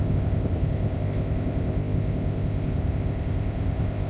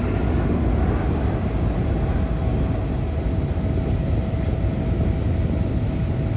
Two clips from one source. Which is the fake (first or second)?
first